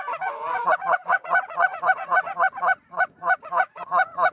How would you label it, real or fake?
fake